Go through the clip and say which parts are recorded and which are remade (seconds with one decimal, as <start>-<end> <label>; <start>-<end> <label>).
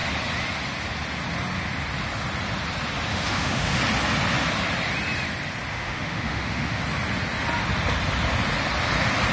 0.0-3.1 recorded; 3.1-3.8 remade; 3.8-5.7 recorded; 5.7-6.8 remade; 6.8-9.3 recorded